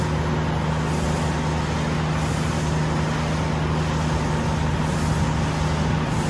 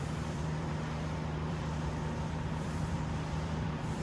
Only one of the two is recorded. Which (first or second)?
first